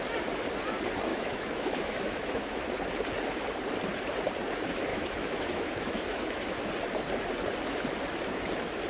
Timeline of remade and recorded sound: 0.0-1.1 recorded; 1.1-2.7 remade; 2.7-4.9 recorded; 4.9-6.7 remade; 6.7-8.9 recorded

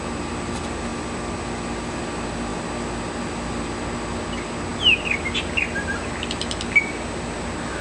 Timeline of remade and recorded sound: 0.0-7.8 recorded

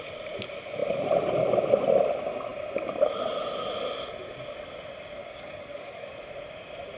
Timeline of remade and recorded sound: 0.0-5.2 recorded; 5.2-6.1 remade; 6.1-7.0 recorded

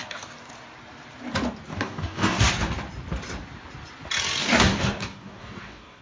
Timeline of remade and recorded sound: 0.0-0.5 remade; 0.5-1.7 recorded; 1.7-2.5 remade; 2.5-4.4 recorded; 4.4-6.0 remade

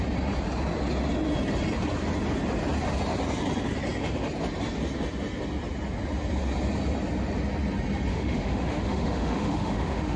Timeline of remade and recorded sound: 0.0-8.1 recorded; 8.1-10.2 remade

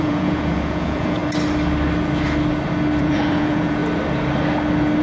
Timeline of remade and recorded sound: 0.0-1.2 remade; 1.2-3.0 recorded; 3.0-3.8 remade; 3.8-5.0 recorded

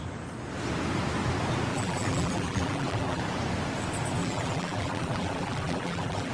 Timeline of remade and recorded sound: 0.0-1.7 recorded; 1.7-3.2 remade; 3.2-4.2 recorded; 4.2-6.3 remade

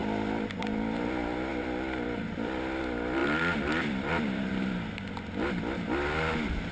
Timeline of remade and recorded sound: 0.0-1.5 recorded; 1.5-2.8 remade; 2.8-3.2 recorded; 3.2-4.4 remade; 4.4-6.7 recorded